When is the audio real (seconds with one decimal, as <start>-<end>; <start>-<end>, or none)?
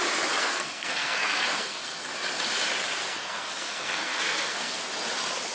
0.0-0.4; 2.1-3.0; 4.8-5.5